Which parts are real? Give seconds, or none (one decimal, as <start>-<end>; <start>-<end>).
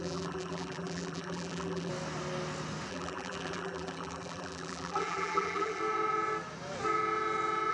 1.9-2.9; 5.8-7.7